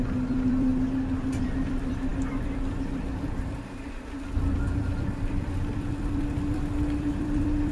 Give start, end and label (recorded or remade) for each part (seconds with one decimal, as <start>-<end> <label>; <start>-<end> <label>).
0.0-0.7 remade; 0.7-1.4 recorded; 1.4-7.7 remade